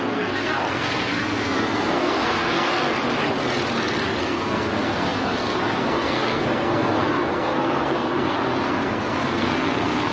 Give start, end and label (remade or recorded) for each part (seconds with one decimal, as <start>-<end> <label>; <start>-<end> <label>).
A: 0.0-2.7 remade; 2.7-4.2 recorded; 4.2-10.1 remade